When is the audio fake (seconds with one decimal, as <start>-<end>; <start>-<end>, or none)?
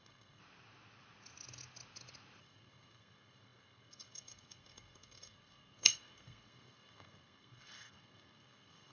0.0-0.4; 2.4-8.9